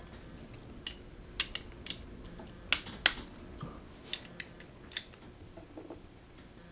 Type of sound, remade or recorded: recorded